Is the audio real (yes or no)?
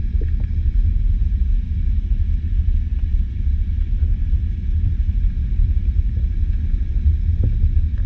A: yes